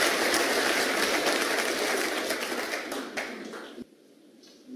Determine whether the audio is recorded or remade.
recorded